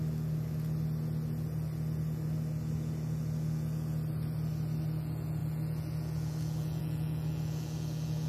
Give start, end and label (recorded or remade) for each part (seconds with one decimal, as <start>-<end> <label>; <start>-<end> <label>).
0.0-8.3 recorded